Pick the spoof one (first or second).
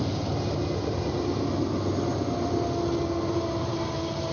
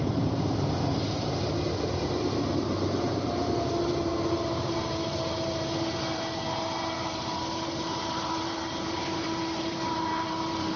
second